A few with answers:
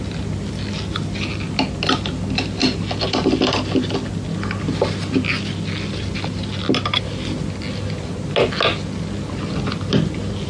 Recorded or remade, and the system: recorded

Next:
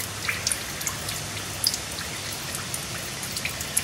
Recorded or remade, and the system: recorded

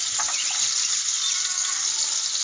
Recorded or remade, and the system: recorded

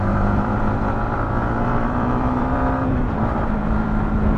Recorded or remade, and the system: remade, vocoder, BigVGAN v2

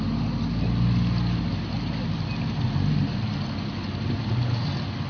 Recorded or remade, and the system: recorded